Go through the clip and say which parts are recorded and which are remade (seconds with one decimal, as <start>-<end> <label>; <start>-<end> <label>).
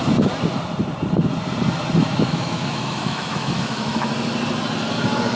0.0-2.0 recorded; 2.0-4.1 remade; 4.1-5.4 recorded